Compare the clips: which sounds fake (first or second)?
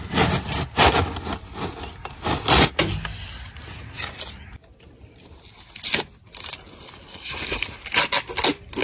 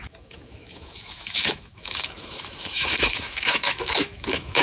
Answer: second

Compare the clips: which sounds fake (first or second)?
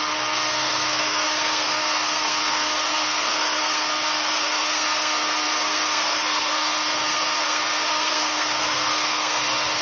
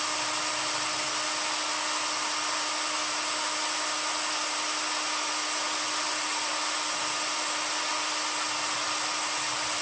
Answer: first